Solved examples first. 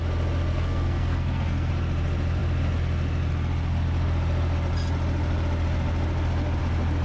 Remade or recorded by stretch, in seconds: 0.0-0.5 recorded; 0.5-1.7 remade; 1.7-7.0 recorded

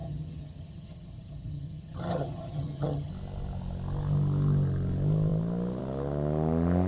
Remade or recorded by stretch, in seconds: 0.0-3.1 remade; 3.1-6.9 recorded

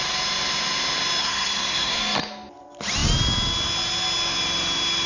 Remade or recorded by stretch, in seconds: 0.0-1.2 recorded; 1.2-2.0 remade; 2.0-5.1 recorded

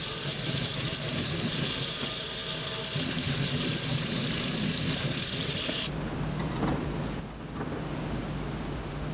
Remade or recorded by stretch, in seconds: 0.0-9.1 recorded

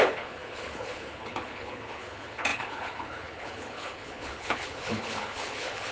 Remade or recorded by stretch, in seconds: 0.0-5.9 remade

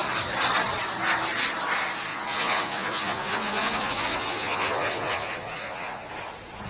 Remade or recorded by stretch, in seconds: 0.0-2.1 recorded; 2.1-6.1 remade; 6.1-6.7 recorded

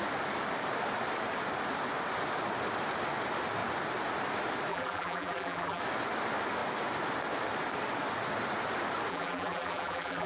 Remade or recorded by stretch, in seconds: 0.0-4.7 recorded; 4.7-5.8 remade; 5.8-9.1 recorded; 9.1-10.3 remade

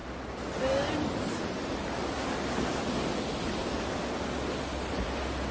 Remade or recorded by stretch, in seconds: 0.0-5.5 recorded